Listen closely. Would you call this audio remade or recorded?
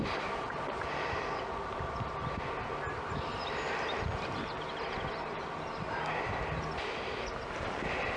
recorded